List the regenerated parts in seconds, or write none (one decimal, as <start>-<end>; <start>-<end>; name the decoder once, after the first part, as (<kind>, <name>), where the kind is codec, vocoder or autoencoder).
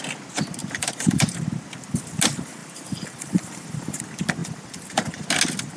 0.6-1.4 (vocoder, BigVGAN v2); 2.6-4.0; 4.4-5.2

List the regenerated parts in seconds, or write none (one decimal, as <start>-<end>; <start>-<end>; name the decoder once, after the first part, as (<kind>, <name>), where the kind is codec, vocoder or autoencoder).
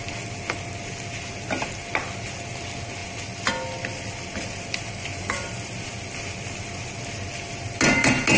none